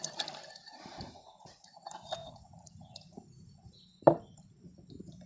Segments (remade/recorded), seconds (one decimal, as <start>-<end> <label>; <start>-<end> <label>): 0.0-0.7 recorded; 0.7-1.8 remade; 1.8-2.2 recorded; 2.2-3.2 remade; 3.2-5.3 recorded

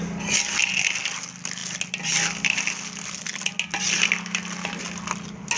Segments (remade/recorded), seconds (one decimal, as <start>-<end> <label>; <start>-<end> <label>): 0.0-5.6 recorded

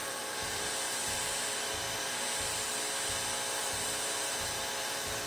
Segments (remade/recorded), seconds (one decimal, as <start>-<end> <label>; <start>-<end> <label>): 0.0-2.7 remade; 2.7-3.6 recorded; 3.6-5.3 remade